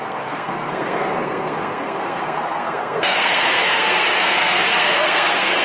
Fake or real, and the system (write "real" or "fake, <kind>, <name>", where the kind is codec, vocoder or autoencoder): fake, codec, SNAC